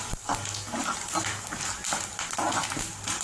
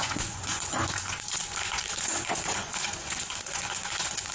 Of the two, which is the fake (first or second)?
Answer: second